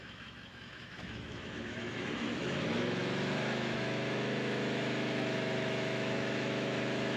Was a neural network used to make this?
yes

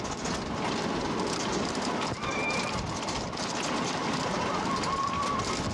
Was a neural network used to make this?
no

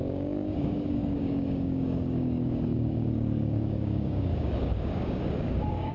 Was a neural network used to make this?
yes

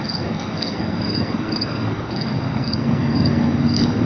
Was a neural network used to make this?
yes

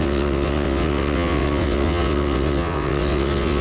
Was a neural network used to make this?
yes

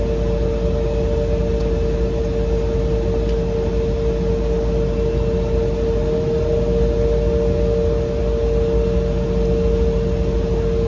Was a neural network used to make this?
no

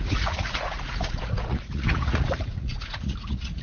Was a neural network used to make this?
yes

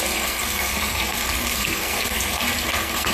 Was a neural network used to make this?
yes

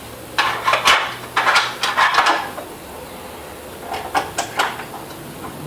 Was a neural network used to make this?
no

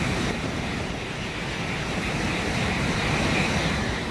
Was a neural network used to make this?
yes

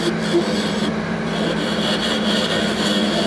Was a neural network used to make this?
no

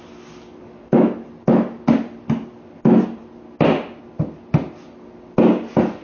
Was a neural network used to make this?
no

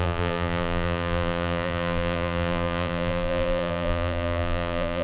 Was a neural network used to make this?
yes